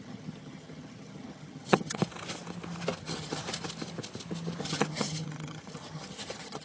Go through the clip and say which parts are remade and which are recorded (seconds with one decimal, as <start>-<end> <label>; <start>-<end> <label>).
0.0-2.0 remade; 2.0-3.0 recorded; 3.0-3.4 remade; 3.4-4.6 recorded; 4.6-6.6 remade